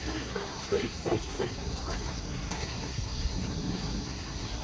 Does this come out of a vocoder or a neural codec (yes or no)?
yes